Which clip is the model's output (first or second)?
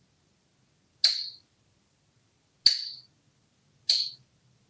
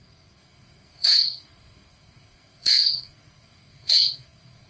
second